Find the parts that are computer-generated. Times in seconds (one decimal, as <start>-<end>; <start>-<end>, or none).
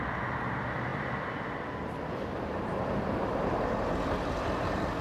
none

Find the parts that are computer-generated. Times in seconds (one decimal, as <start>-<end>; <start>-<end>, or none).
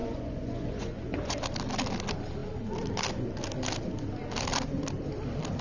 0.0-1.4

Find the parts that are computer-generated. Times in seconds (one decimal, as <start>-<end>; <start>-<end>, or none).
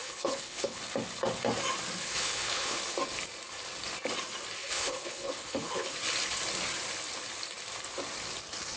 0.0-0.8; 2.0-2.8; 4.6-5.9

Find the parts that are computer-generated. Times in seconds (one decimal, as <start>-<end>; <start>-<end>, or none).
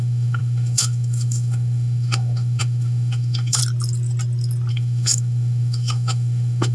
0.0-3.6; 4.7-6.7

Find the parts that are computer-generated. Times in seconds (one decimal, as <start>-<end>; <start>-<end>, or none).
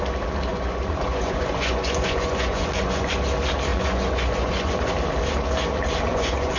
0.5-3.1; 3.7-4.9; 6.1-6.6